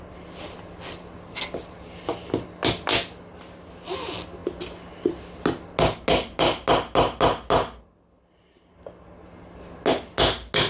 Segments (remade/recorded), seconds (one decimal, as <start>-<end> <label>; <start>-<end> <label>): 0.0-10.7 recorded